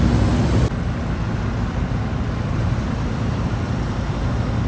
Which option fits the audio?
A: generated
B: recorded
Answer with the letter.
B